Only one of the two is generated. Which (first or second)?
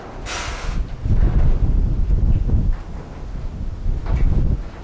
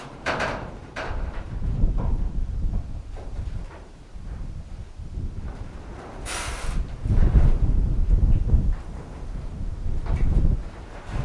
second